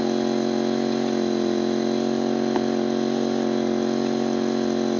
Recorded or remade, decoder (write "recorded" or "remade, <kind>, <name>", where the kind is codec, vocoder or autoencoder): recorded